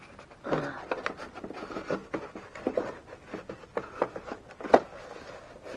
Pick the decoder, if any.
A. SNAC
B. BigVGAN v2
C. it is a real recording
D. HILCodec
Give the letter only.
C